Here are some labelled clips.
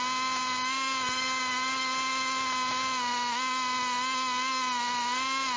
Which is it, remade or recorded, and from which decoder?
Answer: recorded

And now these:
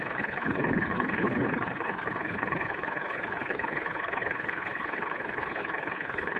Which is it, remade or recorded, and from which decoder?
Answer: remade, codec, HILCodec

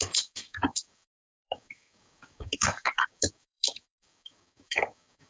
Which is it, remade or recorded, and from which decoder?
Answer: remade, codec, DAC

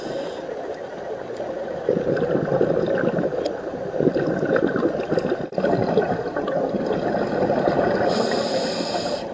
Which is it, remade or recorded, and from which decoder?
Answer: recorded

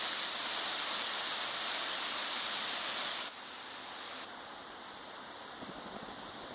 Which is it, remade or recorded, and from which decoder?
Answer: recorded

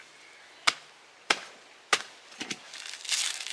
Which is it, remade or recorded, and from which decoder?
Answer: recorded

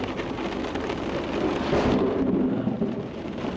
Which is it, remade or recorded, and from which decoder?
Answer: recorded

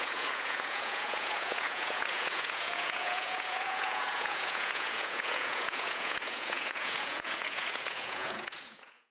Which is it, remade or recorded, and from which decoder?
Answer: remade, vocoder, Vocos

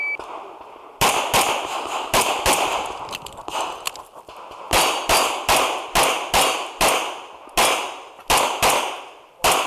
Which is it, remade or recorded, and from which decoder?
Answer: recorded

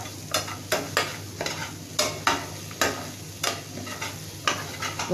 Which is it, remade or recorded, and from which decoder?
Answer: recorded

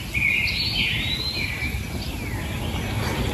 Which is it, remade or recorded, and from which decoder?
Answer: recorded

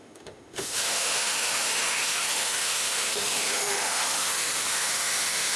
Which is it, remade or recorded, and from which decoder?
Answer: remade, autoencoder, DAC-VAE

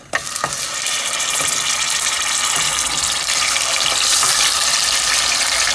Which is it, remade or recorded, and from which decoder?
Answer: recorded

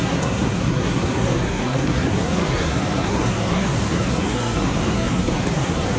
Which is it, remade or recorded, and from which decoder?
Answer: remade, codec, SNAC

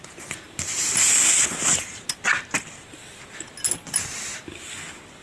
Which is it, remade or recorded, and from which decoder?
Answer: recorded